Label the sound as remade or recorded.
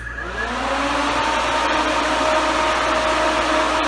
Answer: recorded